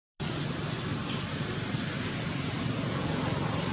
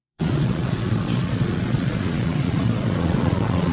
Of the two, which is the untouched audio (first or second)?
first